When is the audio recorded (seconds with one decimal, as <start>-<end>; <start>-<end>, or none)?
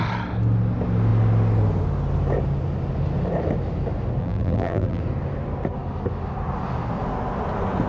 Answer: 0.0-4.2; 5.0-7.9